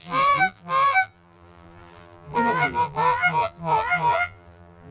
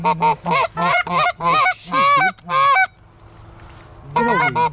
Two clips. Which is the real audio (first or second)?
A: second